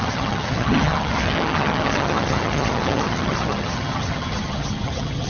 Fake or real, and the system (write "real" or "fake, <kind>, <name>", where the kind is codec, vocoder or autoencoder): fake, vocoder, HiFi-GAN